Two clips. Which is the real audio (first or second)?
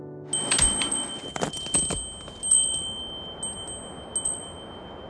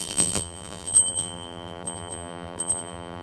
first